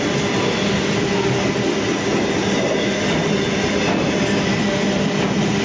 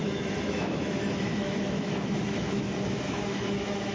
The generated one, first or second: second